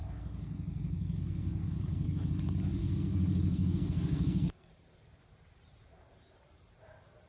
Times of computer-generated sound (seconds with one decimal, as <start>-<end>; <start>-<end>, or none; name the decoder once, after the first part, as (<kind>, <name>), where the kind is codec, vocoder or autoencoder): 0.0-2.3 (codec, SNAC); 2.8-4.7